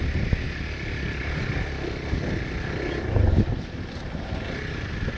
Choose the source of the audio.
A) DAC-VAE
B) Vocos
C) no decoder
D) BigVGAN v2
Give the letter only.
C